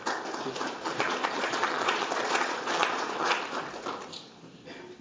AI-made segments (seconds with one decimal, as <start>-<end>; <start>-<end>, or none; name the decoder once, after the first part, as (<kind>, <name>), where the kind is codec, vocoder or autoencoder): 0.6-3.4 (vocoder, Vocos)